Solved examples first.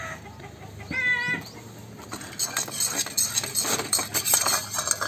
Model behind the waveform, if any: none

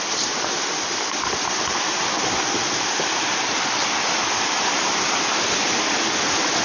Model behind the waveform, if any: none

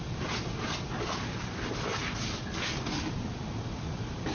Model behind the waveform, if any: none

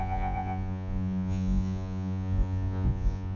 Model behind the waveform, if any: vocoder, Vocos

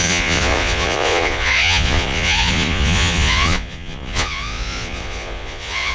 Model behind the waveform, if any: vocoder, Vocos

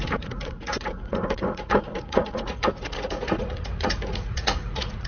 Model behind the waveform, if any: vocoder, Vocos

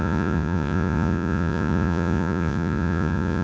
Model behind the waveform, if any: vocoder, Vocos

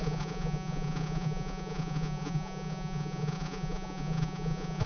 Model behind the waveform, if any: vocoder, Vocos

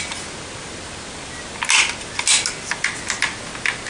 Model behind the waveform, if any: none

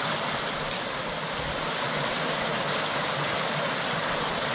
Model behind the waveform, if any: none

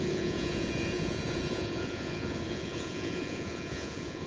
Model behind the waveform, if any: vocoder, Vocos